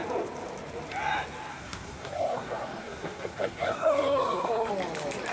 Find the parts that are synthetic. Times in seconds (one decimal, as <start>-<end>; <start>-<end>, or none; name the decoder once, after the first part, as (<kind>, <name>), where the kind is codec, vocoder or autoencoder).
1.5-4.7 (codec, SNAC)